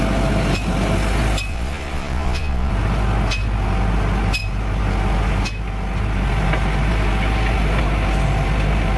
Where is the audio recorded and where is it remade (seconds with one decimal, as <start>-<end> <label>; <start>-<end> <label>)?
0.0-1.5 recorded; 1.5-2.7 remade; 2.7-9.0 recorded